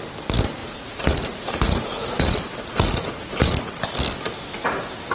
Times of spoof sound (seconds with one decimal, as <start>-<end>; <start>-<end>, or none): 0.6-3.7